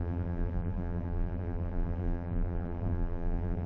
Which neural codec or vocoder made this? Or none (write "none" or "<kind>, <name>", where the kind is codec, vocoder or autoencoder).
vocoder, BigVGAN v2